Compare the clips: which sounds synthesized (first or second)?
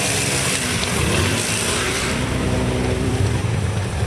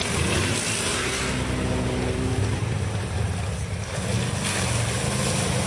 first